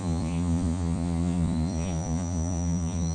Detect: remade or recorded remade